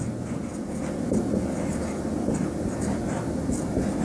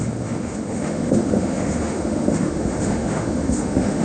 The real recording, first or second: first